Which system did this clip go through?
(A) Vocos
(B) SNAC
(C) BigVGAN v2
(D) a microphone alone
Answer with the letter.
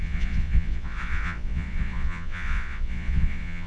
A